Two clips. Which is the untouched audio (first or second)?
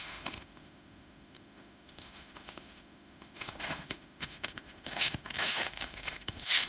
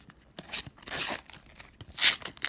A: second